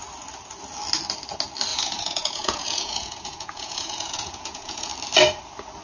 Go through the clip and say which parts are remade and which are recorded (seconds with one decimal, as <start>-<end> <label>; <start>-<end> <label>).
0.0-1.7 recorded; 1.7-4.9 remade; 4.9-5.8 recorded